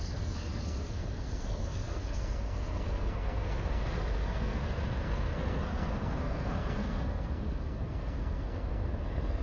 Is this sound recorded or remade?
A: remade